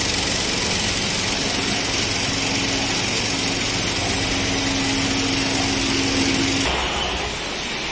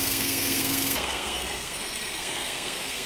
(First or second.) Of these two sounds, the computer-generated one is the second